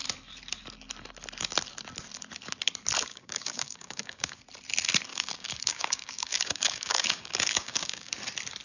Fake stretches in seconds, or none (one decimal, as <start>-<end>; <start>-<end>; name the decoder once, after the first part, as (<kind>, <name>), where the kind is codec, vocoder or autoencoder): 3.1-4.4 (codec, DAC); 5.1-8.1